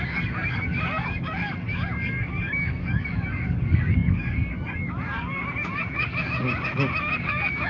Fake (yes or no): yes